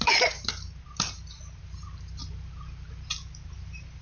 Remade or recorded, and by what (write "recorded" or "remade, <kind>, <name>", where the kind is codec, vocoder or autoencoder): remade, vocoder, BigVGAN v2